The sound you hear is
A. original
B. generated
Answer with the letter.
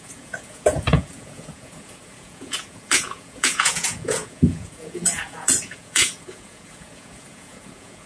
B